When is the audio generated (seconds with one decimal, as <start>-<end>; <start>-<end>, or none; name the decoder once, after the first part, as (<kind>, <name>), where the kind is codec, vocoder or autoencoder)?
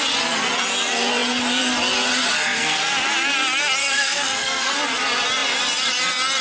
2.3-2.8 (codec, SNAC); 3.8-4.7